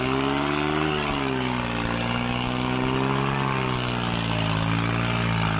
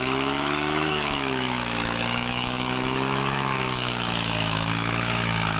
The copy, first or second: second